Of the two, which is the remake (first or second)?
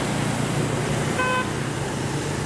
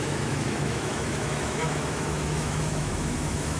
second